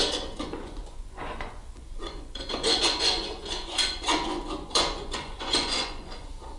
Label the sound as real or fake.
fake